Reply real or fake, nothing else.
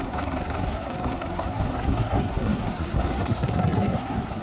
fake